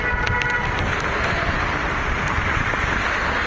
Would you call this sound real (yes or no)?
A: yes